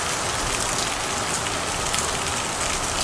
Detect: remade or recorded recorded